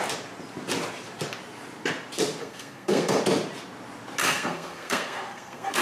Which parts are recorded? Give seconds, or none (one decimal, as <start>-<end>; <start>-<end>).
0.0-2.4; 3.2-4.2